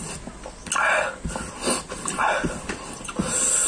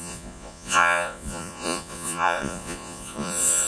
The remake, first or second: second